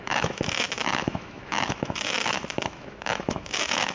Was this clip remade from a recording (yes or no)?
yes